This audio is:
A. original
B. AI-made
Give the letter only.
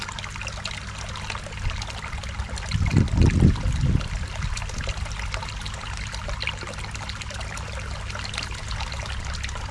A